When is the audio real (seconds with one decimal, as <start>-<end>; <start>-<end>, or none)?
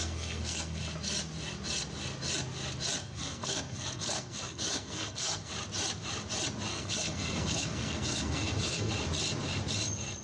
0.8-3.0; 5.5-6.7; 8.9-10.2